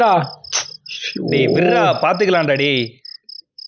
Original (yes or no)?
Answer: yes